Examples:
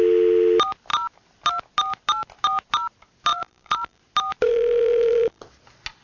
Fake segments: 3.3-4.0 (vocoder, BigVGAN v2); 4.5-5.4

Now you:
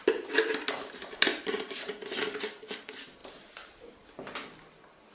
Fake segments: 1.3-1.9 (vocoder, BigVGAN v2)

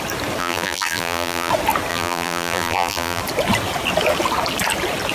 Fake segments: 0.4-1.5 (vocoder, BigVGAN v2); 1.9-3.2

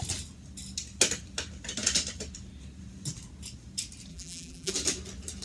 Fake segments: 4.1-4.7 (vocoder, BigVGAN v2)